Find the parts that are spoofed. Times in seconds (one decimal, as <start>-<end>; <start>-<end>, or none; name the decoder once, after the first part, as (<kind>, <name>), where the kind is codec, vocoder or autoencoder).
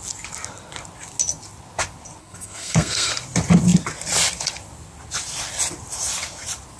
2.2-3.1 (codec, SNAC)